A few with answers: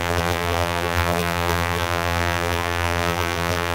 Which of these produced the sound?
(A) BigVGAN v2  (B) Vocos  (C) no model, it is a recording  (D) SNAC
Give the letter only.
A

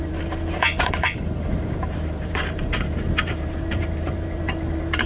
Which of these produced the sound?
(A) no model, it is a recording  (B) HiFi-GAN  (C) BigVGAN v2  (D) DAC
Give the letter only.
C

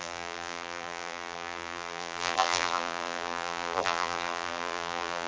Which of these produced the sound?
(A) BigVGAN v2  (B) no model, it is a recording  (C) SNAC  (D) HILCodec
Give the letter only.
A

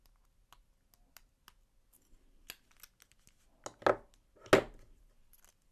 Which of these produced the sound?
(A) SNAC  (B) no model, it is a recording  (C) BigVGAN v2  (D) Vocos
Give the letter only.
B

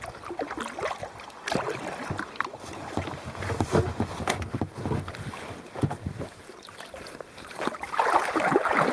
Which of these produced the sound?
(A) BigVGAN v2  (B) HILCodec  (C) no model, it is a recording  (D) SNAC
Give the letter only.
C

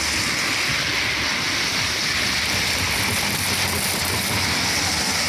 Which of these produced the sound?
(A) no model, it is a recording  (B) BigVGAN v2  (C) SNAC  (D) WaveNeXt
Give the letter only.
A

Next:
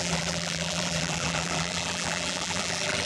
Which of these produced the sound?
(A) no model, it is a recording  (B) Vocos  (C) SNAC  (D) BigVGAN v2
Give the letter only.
D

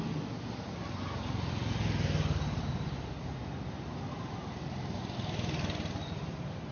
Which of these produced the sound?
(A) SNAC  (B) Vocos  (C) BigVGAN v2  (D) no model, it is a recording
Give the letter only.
D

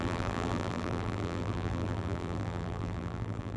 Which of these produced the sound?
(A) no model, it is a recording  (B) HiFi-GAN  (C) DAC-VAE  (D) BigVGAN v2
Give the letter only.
D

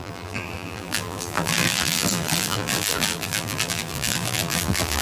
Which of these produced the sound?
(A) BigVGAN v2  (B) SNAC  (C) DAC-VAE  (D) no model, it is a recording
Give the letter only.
A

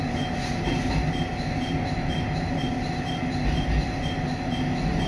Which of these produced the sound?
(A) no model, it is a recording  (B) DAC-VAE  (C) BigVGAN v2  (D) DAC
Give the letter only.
A